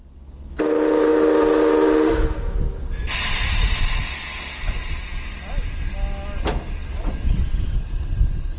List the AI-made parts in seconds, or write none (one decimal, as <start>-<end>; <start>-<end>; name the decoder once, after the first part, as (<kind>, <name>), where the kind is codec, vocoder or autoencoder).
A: 6.8-8.0 (vocoder, WaveNeXt)